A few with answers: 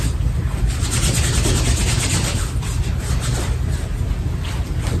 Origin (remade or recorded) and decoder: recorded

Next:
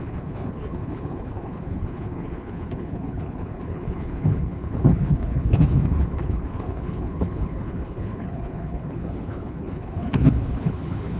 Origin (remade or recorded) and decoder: remade, codec, HILCodec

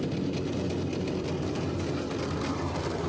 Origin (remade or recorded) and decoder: recorded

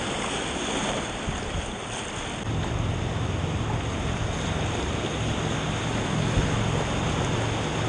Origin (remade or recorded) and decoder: recorded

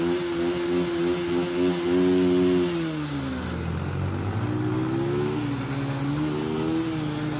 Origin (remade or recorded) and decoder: recorded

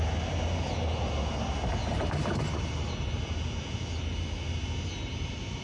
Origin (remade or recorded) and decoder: recorded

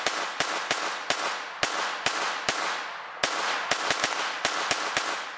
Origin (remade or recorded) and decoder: recorded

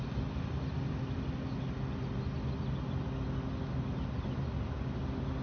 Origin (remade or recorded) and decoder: recorded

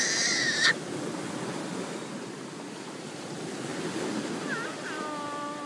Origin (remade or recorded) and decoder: recorded